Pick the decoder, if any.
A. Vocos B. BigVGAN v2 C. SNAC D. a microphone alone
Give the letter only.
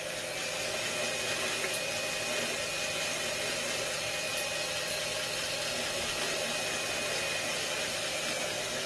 D